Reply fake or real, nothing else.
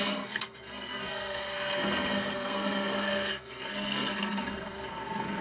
fake